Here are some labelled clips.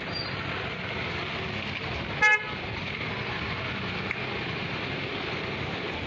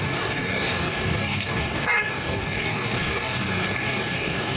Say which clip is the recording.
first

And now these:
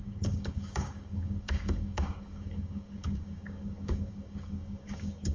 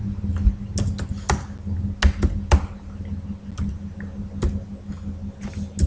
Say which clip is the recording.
second